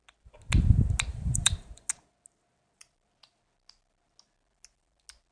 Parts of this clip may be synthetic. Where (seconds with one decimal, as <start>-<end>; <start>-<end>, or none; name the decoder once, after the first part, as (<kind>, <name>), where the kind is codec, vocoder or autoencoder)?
1.1-1.9 (vocoder, BigVGAN v2)